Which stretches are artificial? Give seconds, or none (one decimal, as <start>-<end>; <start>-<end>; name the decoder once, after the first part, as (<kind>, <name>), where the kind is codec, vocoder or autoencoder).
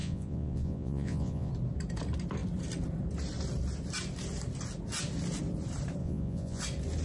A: 0.0-1.5 (vocoder, Vocos); 6.0-6.6